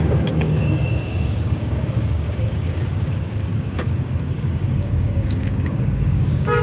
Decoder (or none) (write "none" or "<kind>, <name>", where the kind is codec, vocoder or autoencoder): codec, DAC